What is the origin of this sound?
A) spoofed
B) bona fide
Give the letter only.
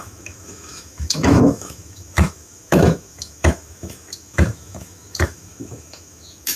A